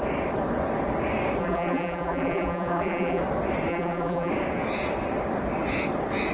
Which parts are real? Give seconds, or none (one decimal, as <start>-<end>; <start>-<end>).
0.0-1.4; 3.2-3.7; 4.3-6.3